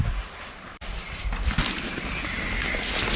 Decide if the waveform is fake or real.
real